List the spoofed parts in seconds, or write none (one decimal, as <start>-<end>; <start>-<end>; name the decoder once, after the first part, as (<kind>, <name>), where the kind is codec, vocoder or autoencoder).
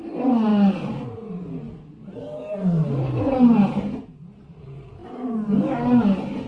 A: none